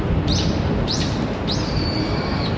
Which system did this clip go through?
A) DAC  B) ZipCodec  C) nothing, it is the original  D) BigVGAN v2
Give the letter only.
D